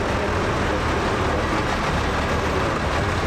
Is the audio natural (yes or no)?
yes